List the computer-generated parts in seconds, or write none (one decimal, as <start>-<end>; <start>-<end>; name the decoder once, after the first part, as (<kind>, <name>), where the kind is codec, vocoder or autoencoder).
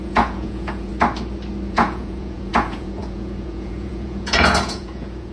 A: 0.0-0.9 (vocoder, Vocos); 1.7-5.3